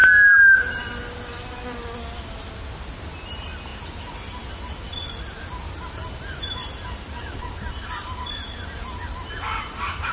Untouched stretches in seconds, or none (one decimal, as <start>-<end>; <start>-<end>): 0.0-10.1